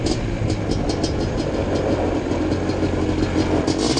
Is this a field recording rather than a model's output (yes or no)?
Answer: yes